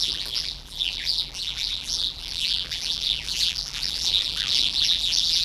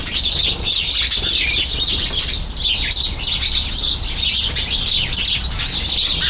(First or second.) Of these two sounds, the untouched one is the second